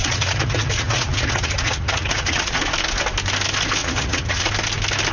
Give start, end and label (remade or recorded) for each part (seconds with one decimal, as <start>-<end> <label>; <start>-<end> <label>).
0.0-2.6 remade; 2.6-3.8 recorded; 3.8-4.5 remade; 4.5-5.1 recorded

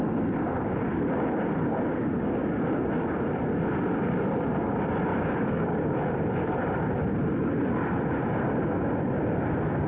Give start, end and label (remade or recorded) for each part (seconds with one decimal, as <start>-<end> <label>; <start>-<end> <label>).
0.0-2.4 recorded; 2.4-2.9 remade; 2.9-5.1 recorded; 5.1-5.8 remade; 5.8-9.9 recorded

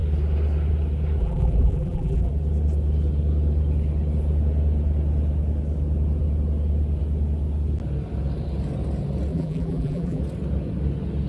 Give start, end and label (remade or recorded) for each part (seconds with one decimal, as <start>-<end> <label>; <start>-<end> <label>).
0.0-1.2 recorded; 1.2-2.3 remade; 2.3-9.3 recorded; 9.3-10.2 remade; 10.2-11.3 recorded

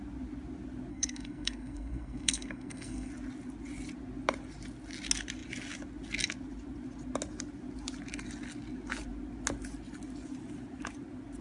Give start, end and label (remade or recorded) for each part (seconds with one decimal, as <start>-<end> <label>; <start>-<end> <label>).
0.0-0.9 recorded; 0.9-3.1 remade; 3.1-11.4 recorded

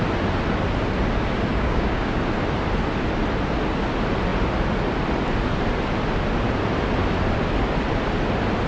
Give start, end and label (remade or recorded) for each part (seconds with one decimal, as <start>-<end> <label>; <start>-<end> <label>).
0.0-1.5 recorded; 1.5-2.2 remade; 2.2-8.7 recorded

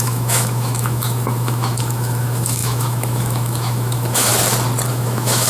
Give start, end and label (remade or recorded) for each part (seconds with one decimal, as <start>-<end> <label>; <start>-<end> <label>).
0.0-4.3 remade; 4.3-4.9 recorded; 4.9-5.5 remade